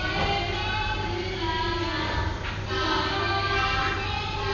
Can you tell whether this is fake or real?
real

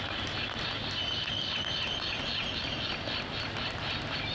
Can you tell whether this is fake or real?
real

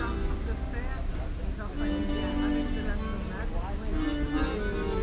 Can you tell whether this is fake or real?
real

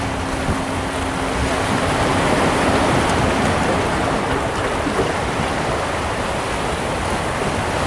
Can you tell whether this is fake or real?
real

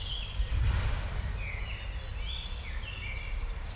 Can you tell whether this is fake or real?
real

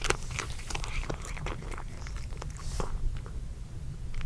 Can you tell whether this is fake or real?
fake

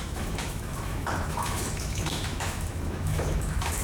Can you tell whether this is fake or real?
fake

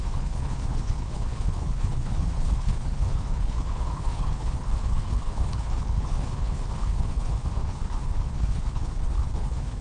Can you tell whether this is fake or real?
fake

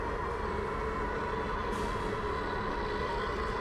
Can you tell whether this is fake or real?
real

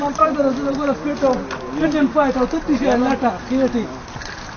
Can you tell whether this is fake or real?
real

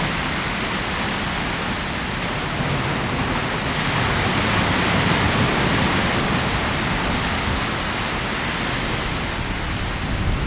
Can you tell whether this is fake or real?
real